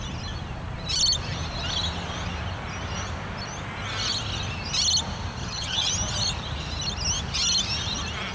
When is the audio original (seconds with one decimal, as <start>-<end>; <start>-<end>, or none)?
0.0-5.4; 5.9-8.3